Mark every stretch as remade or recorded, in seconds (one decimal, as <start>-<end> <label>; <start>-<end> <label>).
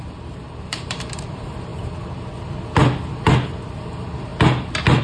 0.0-1.7 remade; 1.7-3.8 recorded; 3.8-4.3 remade; 4.3-5.0 recorded